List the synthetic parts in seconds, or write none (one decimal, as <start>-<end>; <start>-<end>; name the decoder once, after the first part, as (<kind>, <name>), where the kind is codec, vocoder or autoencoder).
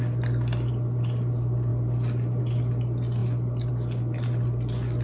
none